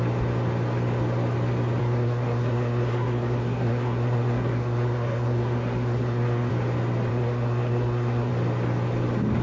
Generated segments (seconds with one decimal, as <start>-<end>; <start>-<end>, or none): 1.8-6.5; 7.1-8.3